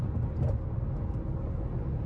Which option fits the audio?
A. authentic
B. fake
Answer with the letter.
A